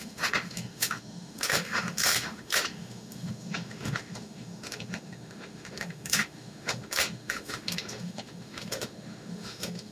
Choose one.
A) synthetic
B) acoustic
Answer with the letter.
A